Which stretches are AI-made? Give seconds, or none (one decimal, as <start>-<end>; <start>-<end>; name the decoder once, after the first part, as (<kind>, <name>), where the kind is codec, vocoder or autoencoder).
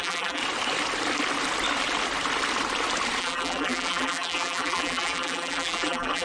0.0-0.4 (vocoder, BigVGAN v2); 3.2-6.2